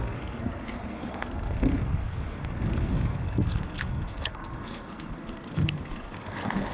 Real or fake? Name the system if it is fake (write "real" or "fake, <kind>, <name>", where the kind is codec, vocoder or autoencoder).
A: fake, codec, SNAC